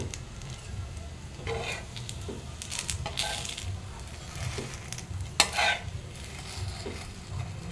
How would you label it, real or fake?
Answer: real